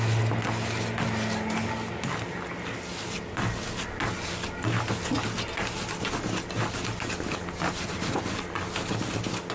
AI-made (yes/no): no